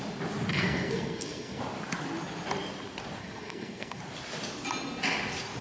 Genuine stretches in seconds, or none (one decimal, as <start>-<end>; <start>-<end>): 0.0-0.5; 1.6-3.2; 4.0-5.6